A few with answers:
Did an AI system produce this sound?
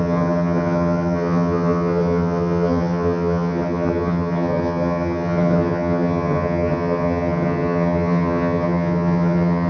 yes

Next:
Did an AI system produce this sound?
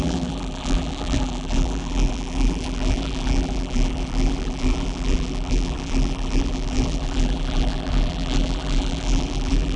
yes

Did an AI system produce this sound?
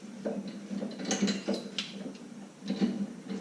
no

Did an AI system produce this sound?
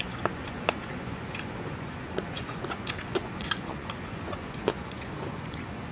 yes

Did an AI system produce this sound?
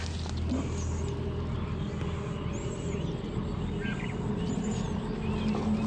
no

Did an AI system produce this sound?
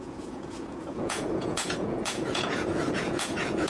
yes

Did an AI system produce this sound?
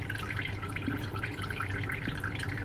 yes